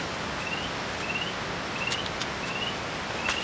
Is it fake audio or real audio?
real